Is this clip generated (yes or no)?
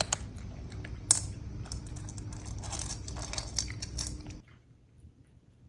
no